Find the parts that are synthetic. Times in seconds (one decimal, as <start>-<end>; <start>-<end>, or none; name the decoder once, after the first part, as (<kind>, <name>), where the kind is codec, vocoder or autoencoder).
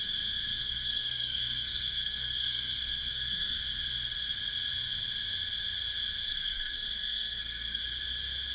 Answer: 0.6-3.6 (codec, SNAC); 6.3-7.8